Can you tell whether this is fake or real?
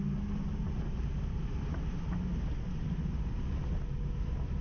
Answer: real